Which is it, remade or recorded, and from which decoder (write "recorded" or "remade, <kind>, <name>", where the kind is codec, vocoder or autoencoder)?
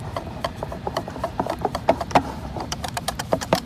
remade, vocoder, BigVGAN v2